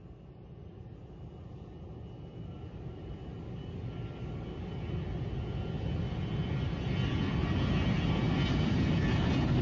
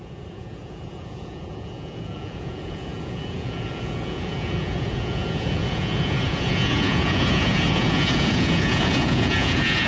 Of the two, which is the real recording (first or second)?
first